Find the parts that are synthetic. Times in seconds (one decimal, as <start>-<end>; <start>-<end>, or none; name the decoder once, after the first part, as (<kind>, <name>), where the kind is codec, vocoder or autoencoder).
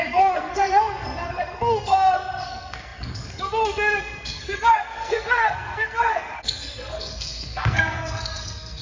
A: 0.0-8.8 (codec, SNAC)